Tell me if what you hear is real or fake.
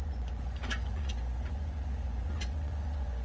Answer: fake